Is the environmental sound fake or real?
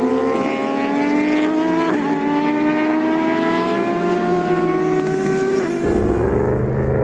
real